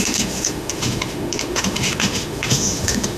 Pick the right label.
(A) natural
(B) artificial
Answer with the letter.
B